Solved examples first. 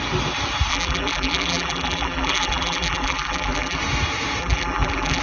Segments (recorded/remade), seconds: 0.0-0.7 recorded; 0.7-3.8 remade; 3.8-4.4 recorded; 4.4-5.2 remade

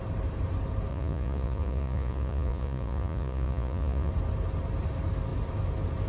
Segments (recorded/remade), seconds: 0.0-0.9 recorded; 0.9-4.1 remade; 4.1-6.1 recorded